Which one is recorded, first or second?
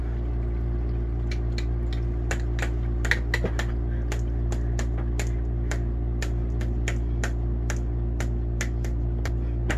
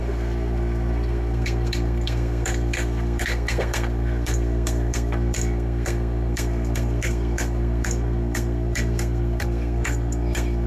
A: first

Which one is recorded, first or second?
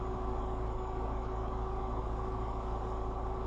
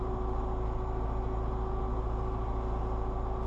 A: second